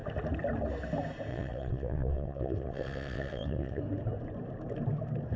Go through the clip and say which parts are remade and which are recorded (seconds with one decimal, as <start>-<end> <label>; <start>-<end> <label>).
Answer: 0.0-1.3 recorded; 1.3-3.8 remade; 3.8-5.4 recorded